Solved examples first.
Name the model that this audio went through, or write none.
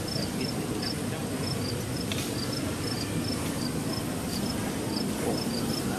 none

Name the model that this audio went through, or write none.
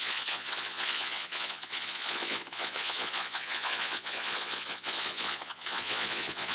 vocoder, Vocos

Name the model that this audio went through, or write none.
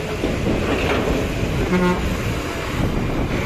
none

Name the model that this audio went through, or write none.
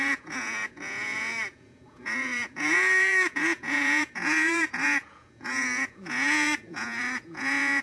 vocoder, Vocos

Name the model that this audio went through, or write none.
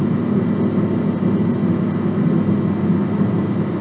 none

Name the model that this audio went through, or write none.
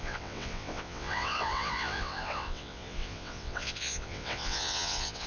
vocoder, WaveNeXt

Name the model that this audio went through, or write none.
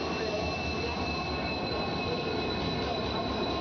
none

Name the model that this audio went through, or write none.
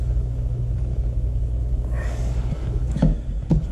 codec, DAC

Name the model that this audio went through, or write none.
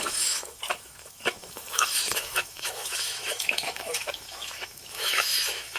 autoencoder, DAC-VAE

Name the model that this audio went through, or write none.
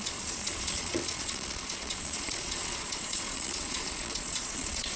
vocoder, Vocos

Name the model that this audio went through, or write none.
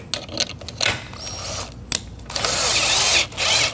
none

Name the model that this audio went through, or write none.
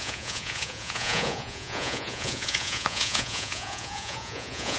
vocoder, Vocos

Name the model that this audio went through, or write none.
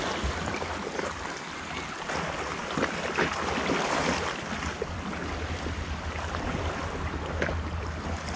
none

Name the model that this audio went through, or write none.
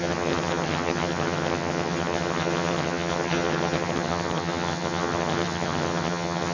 vocoder, HiFi-GAN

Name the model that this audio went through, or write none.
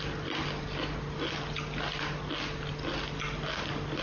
none